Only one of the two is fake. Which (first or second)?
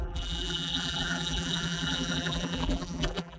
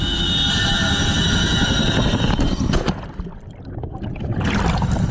first